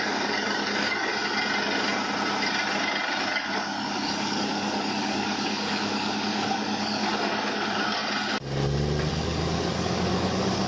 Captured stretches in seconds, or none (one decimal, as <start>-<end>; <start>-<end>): 1.1-3.2; 8.0-9.1